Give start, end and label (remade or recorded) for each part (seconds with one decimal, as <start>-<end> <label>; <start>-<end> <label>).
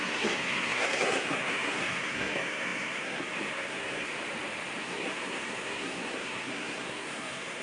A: 0.0-4.1 remade; 4.1-4.8 recorded; 4.8-7.6 remade